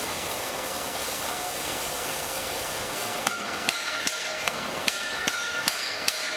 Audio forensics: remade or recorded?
remade